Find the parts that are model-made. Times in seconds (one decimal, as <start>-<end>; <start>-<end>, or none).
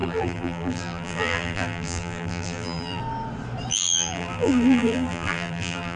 0.0-3.0; 3.7-6.0